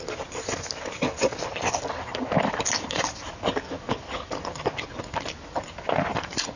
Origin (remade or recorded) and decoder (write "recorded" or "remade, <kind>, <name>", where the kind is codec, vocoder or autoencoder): recorded